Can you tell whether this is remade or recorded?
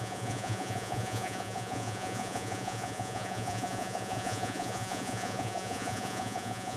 remade